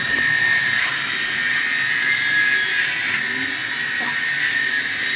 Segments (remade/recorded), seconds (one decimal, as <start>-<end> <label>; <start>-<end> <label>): 0.0-5.2 recorded